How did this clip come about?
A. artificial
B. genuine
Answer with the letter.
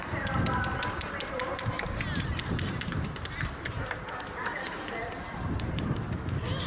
A